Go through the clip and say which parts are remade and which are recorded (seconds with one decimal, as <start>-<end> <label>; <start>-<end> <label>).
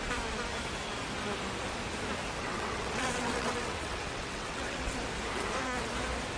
0.0-2.4 recorded; 2.4-4.9 remade; 4.9-6.4 recorded